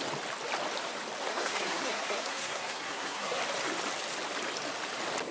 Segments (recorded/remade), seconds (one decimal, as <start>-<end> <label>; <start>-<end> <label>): 0.0-1.3 recorded; 1.3-3.4 remade; 3.4-5.3 recorded